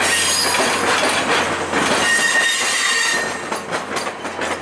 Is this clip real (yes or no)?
yes